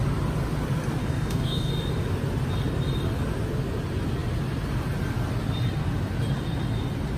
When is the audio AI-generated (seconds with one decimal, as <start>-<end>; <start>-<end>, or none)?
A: 1.0-1.7